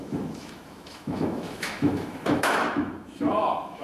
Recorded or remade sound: remade